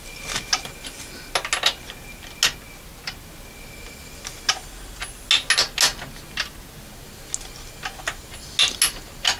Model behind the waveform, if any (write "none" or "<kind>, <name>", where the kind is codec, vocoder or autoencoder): none